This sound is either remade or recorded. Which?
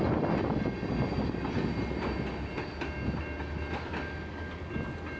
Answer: recorded